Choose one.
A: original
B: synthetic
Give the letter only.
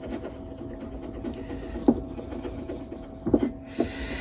A